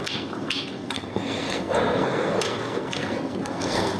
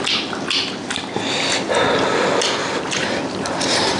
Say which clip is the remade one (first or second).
first